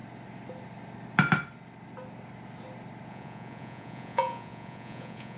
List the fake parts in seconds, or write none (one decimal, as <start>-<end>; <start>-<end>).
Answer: 3.1-5.4